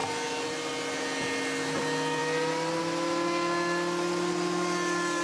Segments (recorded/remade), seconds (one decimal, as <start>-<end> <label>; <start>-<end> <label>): 0.0-5.2 recorded

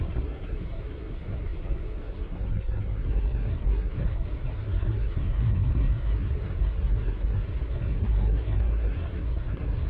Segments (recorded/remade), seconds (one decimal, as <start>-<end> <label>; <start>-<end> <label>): 0.0-9.9 remade

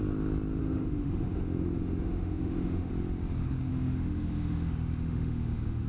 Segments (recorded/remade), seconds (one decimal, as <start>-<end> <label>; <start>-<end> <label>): 0.0-0.6 recorded; 0.6-2.9 remade; 2.9-3.7 recorded; 3.7-5.9 remade

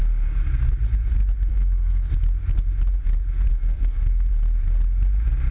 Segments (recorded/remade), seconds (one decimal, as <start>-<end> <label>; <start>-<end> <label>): 0.0-1.5 recorded; 1.5-2.1 remade; 2.1-3.5 recorded; 3.5-4.3 remade; 4.3-5.5 recorded

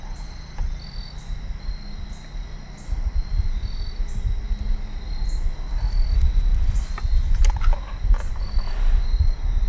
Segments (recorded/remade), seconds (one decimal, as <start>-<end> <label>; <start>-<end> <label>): 0.0-9.7 recorded

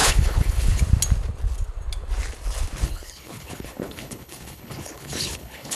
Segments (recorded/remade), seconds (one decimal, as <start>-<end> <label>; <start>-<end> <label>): 0.0-0.8 remade; 0.8-2.8 recorded; 2.8-5.8 remade